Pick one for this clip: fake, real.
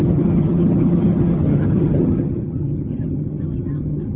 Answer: fake